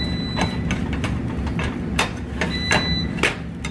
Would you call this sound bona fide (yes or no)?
yes